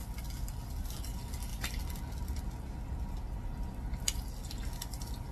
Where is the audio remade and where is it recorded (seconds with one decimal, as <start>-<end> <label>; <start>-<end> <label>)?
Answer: 0.0-5.3 recorded